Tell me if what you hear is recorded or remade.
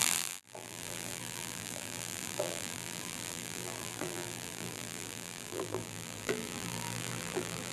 remade